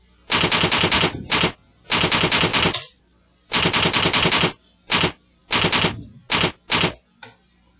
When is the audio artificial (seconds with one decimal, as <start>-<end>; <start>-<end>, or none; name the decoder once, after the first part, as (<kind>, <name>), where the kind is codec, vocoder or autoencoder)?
2.5-4.3 (vocoder, BigVGAN v2)